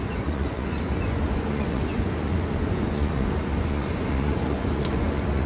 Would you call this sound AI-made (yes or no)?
yes